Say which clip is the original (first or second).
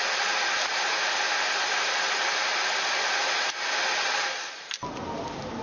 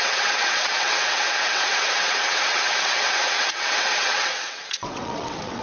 first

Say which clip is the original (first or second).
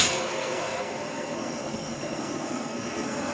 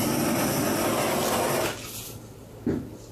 second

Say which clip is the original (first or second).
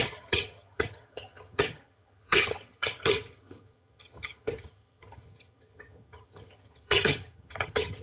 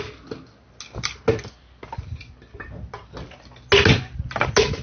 second